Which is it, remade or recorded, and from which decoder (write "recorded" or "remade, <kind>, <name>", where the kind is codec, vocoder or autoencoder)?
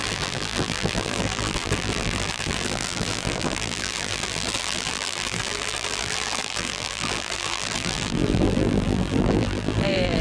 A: remade, vocoder, BigVGAN v2